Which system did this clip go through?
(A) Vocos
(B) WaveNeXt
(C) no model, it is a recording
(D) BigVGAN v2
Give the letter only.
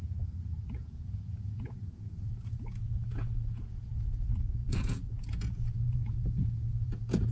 A